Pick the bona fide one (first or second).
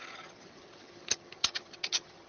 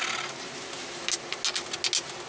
second